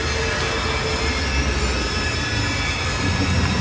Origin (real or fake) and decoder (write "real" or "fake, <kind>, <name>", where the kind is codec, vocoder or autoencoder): real